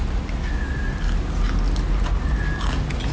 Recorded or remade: recorded